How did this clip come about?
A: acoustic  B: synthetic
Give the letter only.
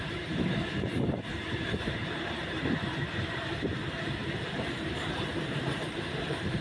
B